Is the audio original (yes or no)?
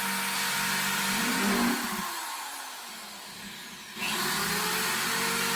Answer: yes